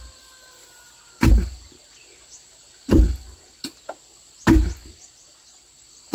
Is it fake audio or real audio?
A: real